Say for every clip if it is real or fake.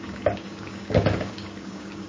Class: fake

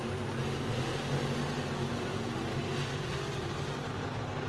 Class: real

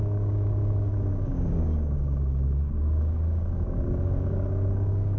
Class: fake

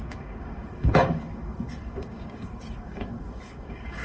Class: fake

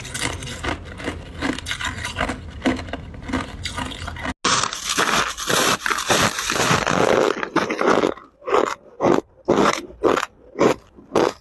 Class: real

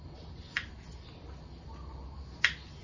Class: real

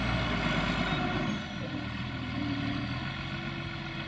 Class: real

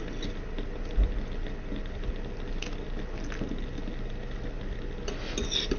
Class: real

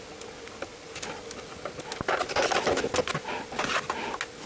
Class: real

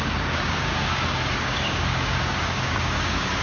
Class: fake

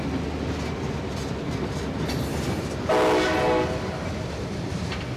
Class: real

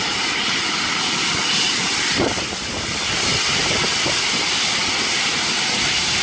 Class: real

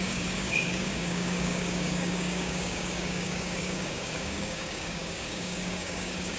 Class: fake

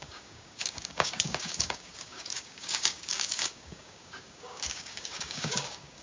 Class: fake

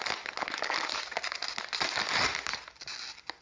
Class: real